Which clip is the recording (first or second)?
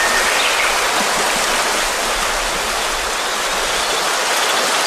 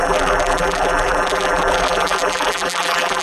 first